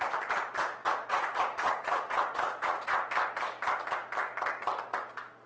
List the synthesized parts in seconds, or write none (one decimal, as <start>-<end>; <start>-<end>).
0.8-3.1